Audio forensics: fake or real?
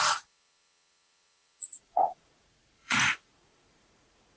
fake